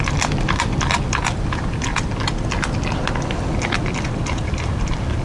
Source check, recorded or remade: remade